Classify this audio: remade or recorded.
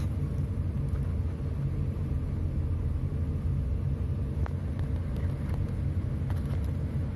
recorded